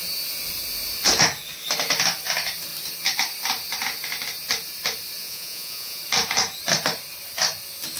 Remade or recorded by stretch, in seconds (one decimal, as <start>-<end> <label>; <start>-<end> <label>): 0.0-5.2 recorded; 5.2-6.0 remade; 6.0-8.0 recorded